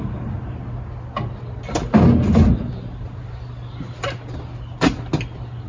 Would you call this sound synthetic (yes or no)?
no